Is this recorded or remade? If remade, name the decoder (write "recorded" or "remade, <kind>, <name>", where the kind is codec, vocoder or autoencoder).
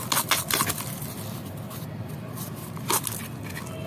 recorded